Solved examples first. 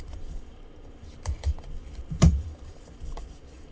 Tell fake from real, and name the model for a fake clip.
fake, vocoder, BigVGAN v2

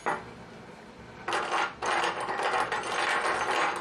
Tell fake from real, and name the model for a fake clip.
real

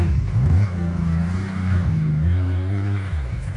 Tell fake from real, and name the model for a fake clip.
fake, codec, DAC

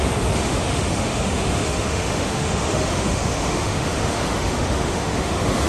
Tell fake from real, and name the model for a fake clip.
fake, autoencoder, DAC-VAE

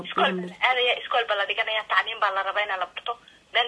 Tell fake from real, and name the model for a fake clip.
real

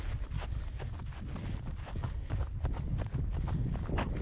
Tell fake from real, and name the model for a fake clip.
real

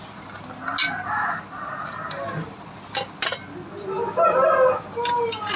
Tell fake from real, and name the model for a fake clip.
real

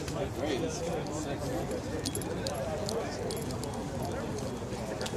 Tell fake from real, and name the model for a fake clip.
real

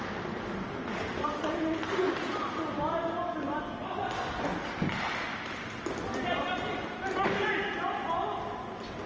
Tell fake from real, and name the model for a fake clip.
real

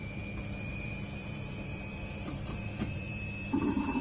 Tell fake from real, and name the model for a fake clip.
fake, vocoder, BigVGAN v2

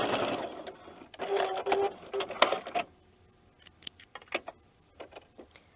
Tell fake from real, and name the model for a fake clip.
real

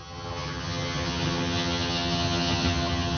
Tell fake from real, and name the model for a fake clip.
fake, vocoder, HiFi-GAN